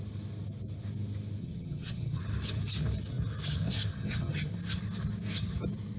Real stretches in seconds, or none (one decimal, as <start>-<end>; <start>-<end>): 0.0-1.4; 2.2-3.9; 4.5-6.0